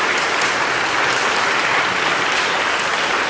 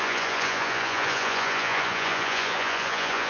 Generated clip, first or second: second